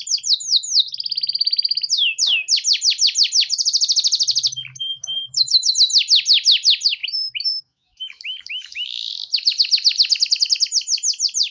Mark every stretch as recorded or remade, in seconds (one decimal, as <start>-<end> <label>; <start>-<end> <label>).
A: 0.0-4.7 recorded; 4.7-5.7 remade; 5.7-7.0 recorded; 7.0-9.1 remade; 9.1-11.5 recorded